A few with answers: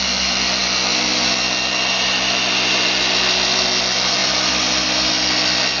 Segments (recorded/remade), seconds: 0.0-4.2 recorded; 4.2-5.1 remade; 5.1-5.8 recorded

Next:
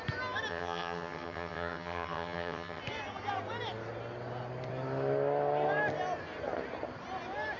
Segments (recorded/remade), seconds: 0.0-0.5 recorded; 0.5-2.8 remade; 2.8-7.6 recorded

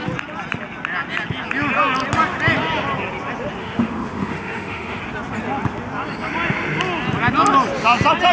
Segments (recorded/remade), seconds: 0.0-3.6 recorded; 3.6-5.0 remade; 5.0-8.3 recorded

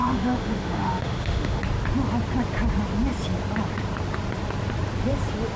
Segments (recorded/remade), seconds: 0.0-1.6 remade; 1.6-5.6 recorded

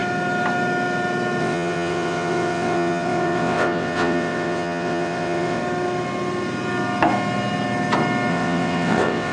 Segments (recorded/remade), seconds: 0.0-1.4 recorded; 1.4-5.6 remade; 5.6-8.3 recorded; 8.3-9.3 remade